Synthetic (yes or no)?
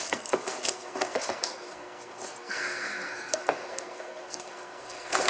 yes